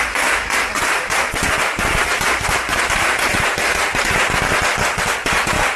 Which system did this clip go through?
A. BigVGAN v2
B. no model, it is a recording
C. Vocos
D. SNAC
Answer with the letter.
B